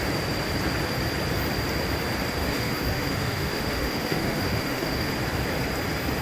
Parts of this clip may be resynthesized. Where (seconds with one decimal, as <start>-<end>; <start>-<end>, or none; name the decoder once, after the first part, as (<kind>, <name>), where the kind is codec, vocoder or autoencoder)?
2.4-5.1 (autoencoder, DAC-VAE)